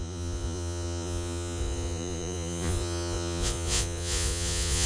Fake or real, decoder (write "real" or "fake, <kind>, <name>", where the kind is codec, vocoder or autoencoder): fake, vocoder, Vocos